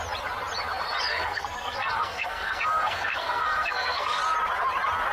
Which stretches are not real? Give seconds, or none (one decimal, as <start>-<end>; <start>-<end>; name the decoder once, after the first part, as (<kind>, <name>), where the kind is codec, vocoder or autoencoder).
1.1-4.2 (codec, SNAC)

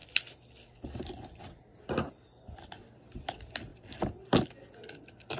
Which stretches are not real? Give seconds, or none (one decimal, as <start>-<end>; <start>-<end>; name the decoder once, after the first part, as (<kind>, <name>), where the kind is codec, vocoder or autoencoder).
none

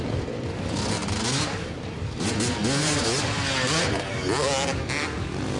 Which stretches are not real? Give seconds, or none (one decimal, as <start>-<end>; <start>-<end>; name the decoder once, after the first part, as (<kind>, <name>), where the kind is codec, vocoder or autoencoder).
none

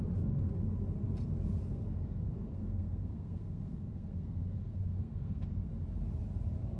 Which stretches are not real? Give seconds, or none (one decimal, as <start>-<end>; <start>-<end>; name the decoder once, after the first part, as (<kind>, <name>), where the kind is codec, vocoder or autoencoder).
1.6-5.7 (codec, SNAC)

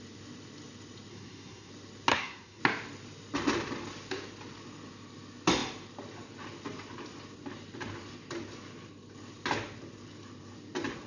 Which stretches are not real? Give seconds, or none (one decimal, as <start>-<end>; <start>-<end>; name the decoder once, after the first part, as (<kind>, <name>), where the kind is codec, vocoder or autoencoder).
1.1-1.7 (codec, SNAC); 2.1-2.6